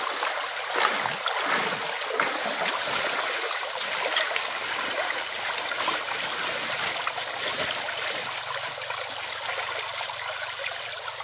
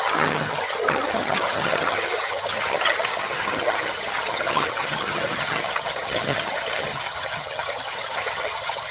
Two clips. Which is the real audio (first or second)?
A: first